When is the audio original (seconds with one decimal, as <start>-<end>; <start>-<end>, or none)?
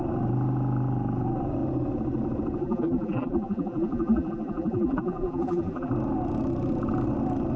0.0-2.6; 5.9-7.6